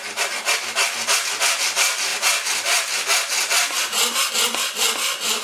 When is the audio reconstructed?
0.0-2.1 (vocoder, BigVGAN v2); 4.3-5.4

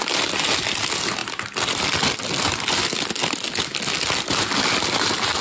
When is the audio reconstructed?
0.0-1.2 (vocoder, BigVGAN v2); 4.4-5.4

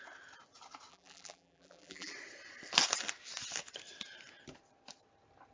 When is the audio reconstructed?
0.9-2.1 (vocoder, BigVGAN v2)

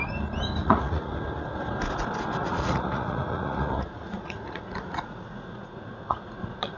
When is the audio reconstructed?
0.6-1.1 (vocoder, Vocos); 2.4-6.8